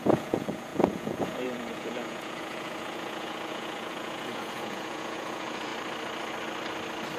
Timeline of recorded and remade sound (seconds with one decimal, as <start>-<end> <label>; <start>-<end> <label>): 0.0-5.7 remade; 5.7-7.2 recorded